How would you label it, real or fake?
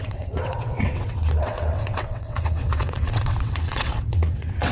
fake